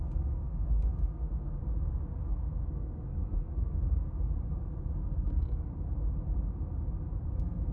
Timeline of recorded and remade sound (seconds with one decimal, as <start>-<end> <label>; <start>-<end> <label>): 0.0-1.6 remade; 1.6-2.3 recorded; 2.3-3.8 remade; 3.8-4.8 recorded; 4.8-5.7 remade; 5.7-7.3 recorded; 7.3-7.7 remade

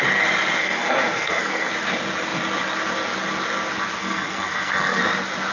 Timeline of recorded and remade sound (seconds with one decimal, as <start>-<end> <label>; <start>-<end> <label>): 0.0-0.6 recorded; 0.6-1.7 remade; 1.7-4.0 recorded; 4.0-5.0 remade; 5.0-5.5 recorded

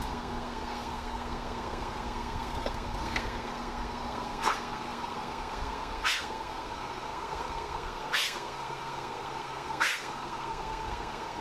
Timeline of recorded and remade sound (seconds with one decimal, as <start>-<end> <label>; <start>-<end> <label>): 0.0-11.4 remade

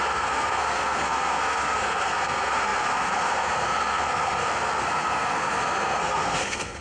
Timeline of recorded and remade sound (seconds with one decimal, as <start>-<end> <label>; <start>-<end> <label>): 0.0-6.8 remade

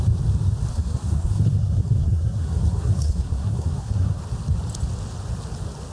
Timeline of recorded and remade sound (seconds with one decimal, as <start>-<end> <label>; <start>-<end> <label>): 0.0-0.7 recorded; 0.7-4.2 remade; 4.2-5.9 recorded

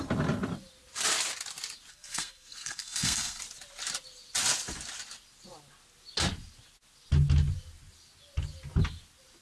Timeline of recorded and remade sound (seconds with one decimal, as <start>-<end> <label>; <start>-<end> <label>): 0.0-1.9 recorded; 1.9-3.4 remade; 3.4-9.4 recorded

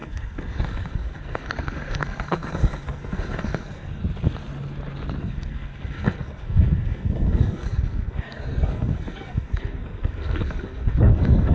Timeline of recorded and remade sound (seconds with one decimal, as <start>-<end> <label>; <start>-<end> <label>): 0.0-4.0 remade; 4.0-5.2 recorded; 5.2-11.5 remade

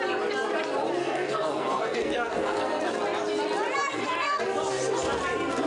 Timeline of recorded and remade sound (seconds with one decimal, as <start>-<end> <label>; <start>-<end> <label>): 0.0-1.0 recorded; 1.0-2.8 remade; 2.8-3.8 recorded; 3.8-4.4 remade; 4.4-5.7 recorded